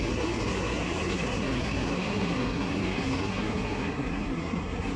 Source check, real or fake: fake